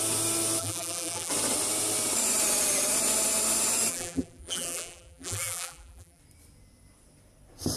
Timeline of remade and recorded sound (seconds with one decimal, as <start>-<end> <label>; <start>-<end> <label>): 0.0-0.6 recorded; 0.6-1.3 remade; 1.3-3.9 recorded; 3.9-6.2 remade; 6.2-7.8 recorded